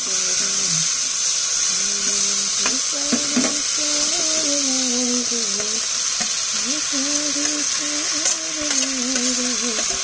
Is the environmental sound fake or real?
real